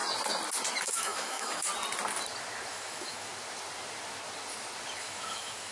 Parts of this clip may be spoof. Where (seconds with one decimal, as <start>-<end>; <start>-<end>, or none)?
0.8-1.7; 2.7-3.3; 5.0-5.7